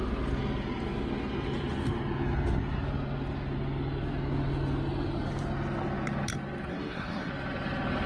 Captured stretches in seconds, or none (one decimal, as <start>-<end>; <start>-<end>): 0.0-6.7; 7.3-8.1